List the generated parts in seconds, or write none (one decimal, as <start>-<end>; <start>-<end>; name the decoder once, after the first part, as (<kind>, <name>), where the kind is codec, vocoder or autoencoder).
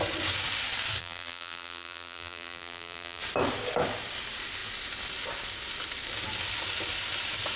1.0-3.2 (vocoder, BigVGAN v2)